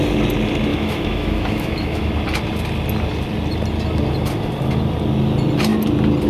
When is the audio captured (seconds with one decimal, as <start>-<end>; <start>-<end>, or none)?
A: 0.0-0.7; 2.1-6.3